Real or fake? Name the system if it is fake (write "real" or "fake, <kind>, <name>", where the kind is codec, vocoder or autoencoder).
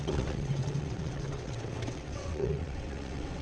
fake, vocoder, WaveNeXt